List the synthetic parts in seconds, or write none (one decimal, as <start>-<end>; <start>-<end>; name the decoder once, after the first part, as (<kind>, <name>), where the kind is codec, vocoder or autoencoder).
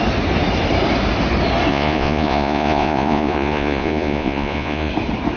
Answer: 1.7-4.9 (vocoder, Vocos)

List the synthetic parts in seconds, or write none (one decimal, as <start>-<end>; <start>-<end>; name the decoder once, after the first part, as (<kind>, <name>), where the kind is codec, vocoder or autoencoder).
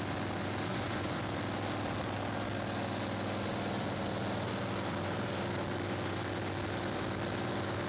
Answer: 0.7-1.2 (vocoder, Vocos)